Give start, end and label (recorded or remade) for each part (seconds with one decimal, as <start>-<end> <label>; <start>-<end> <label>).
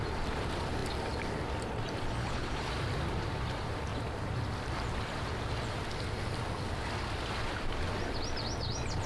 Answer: 0.0-2.2 recorded; 2.2-2.7 remade; 2.7-9.1 recorded